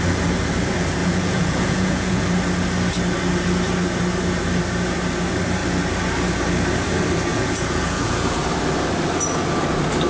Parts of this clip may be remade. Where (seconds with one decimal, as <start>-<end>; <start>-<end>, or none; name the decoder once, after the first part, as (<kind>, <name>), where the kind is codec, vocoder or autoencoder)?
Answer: 1.0-2.2 (vocoder, Vocos); 7.3-8.4